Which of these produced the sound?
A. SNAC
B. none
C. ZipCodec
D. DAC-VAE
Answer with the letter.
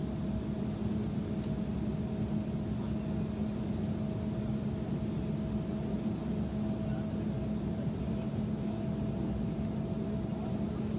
B